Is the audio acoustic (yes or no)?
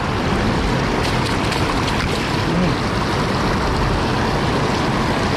yes